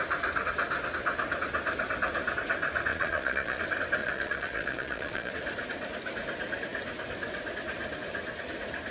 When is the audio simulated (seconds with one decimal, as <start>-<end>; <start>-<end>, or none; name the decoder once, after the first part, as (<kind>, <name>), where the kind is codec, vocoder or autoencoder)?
2.9-3.6 (vocoder, Vocos); 4.0-5.3